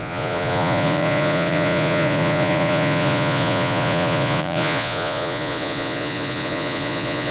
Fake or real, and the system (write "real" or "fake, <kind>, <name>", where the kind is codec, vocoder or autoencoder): fake, vocoder, Vocos